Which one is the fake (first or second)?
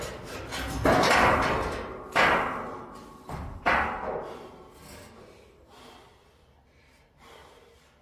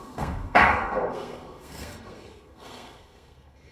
second